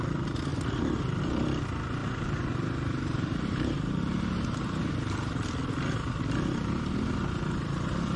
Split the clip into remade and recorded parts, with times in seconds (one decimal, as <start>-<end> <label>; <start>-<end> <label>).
0.0-0.5 recorded; 0.5-1.2 remade; 1.2-2.0 recorded; 2.0-4.9 remade; 4.9-8.2 recorded